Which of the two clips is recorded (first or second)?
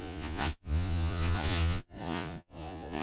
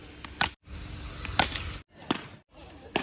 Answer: second